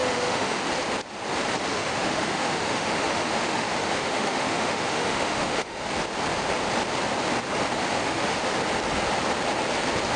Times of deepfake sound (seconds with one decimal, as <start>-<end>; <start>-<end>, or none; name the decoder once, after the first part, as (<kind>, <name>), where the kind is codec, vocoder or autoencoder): 0.0-0.6 (autoencoder, DAC-VAE); 1.7-5.9; 7.8-8.4